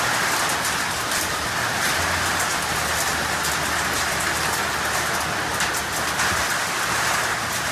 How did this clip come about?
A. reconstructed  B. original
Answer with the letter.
B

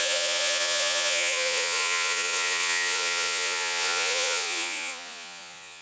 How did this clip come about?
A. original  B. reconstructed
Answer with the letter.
B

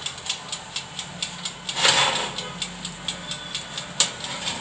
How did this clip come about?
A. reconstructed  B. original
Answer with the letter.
B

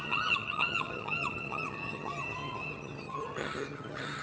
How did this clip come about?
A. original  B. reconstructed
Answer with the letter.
B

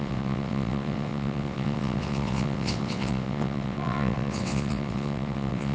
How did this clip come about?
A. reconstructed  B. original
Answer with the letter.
A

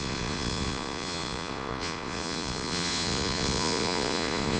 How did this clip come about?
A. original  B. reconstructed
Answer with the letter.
B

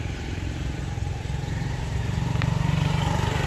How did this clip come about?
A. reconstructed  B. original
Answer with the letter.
A